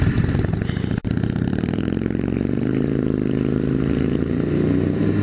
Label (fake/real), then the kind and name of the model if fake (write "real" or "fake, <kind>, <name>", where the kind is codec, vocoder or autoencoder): fake, vocoder, BigVGAN v2